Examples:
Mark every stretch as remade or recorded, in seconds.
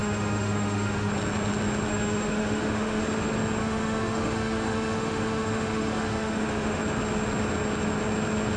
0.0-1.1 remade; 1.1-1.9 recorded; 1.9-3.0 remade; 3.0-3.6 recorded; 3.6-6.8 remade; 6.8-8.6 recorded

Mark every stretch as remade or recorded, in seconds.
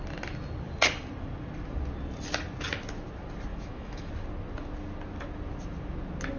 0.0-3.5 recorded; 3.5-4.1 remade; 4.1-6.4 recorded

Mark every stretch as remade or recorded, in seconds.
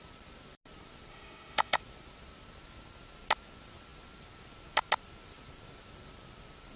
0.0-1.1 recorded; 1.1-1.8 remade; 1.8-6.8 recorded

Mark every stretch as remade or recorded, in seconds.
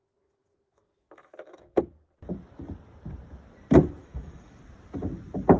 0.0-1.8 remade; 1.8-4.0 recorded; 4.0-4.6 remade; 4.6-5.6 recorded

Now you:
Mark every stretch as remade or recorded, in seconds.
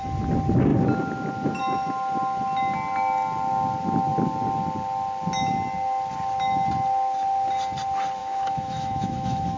0.0-8.2 recorded; 8.2-9.6 remade